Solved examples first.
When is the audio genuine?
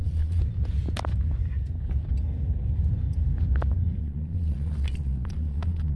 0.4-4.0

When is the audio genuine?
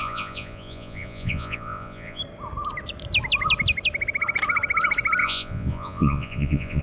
2.2-5.2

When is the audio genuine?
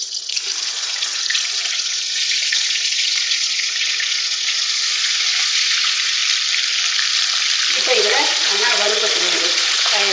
6.2-8.0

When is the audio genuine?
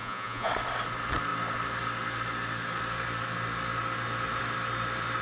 0.5-5.2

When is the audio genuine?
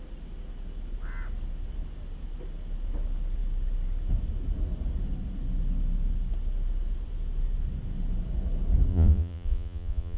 0.0-8.9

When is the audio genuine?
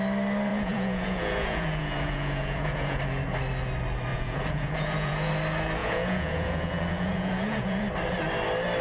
0.0-0.5; 3.0-4.1; 5.3-5.8; 7.8-8.8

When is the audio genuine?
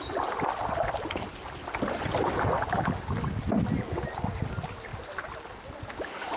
0.0-6.4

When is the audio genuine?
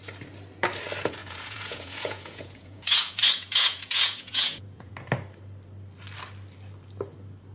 0.0-1.2; 4.9-7.5